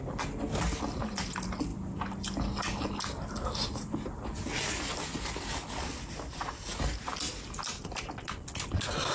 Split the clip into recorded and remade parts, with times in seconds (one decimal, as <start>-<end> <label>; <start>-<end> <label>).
0.0-9.1 recorded

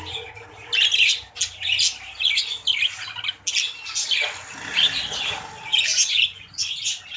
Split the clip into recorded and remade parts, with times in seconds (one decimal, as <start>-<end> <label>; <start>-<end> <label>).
0.0-5.9 recorded; 5.9-6.7 remade; 6.7-7.2 recorded